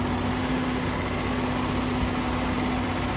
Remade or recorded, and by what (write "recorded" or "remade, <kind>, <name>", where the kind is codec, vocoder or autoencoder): recorded